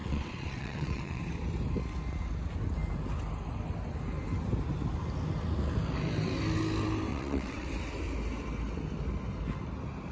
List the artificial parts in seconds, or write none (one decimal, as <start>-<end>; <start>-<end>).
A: 0.0-1.2; 7.1-7.7